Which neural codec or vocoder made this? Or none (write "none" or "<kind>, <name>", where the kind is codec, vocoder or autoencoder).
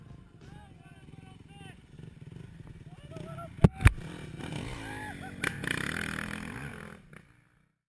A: none